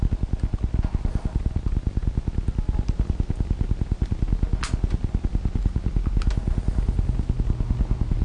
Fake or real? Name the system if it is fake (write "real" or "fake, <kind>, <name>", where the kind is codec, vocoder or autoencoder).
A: real